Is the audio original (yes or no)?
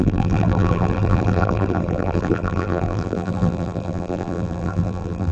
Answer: no